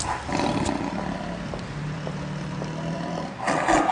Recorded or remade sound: recorded